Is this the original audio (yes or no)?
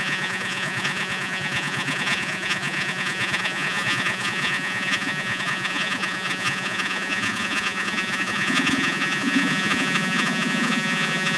no